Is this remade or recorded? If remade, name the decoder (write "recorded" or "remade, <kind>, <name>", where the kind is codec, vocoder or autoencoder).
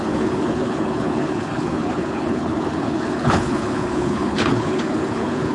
remade, codec, HILCodec